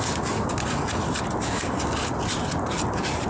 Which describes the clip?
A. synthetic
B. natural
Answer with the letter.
B